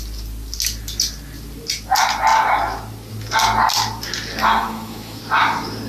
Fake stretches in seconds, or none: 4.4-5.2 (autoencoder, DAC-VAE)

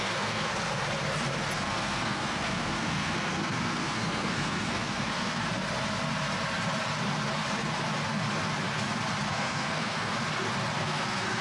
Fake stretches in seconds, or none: 0.0-0.5 (codec, SNAC); 1.5-5.4; 9.2-10.1; 10.8-11.4

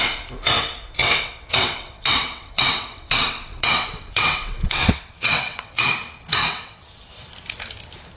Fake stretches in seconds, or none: 1.0-5.9 (vocoder, WaveNeXt); 6.4-7.1

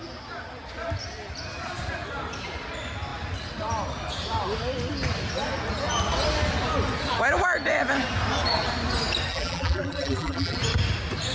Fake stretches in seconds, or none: 9.3-10.6 (vocoder, BigVGAN v2)

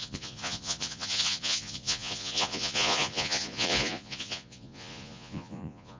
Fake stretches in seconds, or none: 0.0-6.0 (vocoder, Vocos)

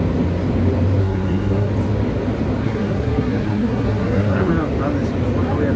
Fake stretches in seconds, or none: 1.0-1.7 (codec, SNAC); 2.6-4.5